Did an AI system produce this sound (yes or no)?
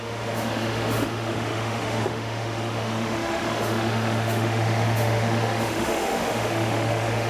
yes